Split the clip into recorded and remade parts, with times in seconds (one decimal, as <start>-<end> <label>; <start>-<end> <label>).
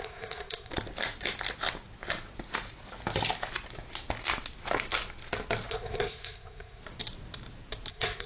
0.0-0.7 remade; 0.7-5.7 recorded; 5.7-6.8 remade; 6.8-7.9 recorded; 7.9-8.3 remade